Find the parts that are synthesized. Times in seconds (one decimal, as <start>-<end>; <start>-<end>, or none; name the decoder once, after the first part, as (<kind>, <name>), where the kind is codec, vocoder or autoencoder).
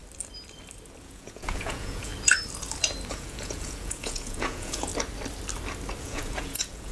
1.0-2.1 (vocoder, Vocos); 3.1-4.9; 6.0-6.9